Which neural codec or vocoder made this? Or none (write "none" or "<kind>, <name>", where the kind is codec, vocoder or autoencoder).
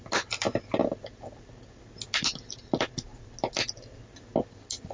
none